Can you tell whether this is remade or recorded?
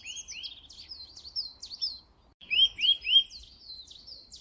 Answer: recorded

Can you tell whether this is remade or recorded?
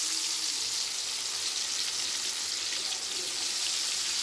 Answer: recorded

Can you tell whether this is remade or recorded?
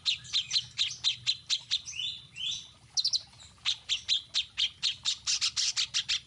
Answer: recorded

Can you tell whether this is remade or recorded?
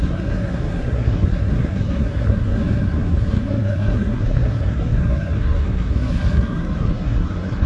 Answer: remade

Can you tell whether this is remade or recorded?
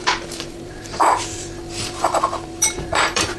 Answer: remade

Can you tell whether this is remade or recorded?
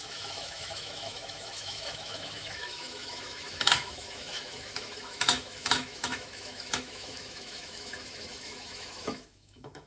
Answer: remade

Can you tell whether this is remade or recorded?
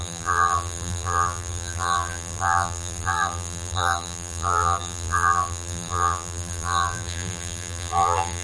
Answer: remade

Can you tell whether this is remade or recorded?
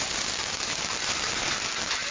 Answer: recorded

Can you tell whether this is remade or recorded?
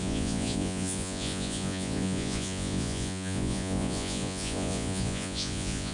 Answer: remade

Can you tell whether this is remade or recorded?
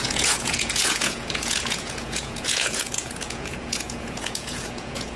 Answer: remade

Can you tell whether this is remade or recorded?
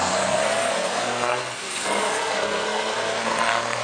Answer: remade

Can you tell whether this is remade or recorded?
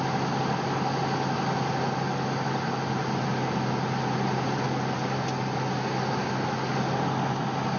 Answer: recorded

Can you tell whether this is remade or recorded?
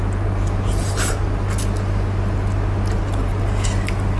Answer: recorded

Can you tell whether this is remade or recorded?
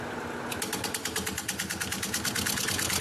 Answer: recorded